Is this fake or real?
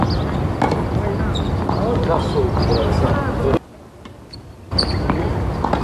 real